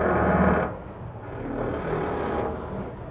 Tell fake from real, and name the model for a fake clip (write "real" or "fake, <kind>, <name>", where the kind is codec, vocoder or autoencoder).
real